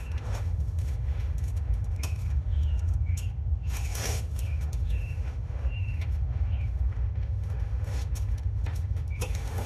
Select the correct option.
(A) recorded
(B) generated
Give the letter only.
B